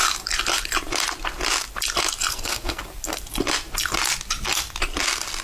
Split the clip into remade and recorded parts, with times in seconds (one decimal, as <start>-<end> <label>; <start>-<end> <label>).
0.0-2.3 recorded; 2.3-2.8 remade; 2.8-5.4 recorded